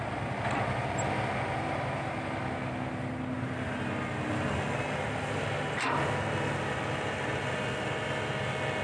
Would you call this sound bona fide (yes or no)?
yes